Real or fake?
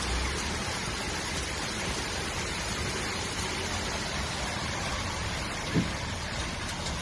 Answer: real